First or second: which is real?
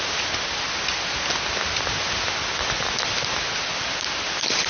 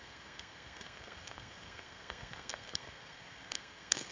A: first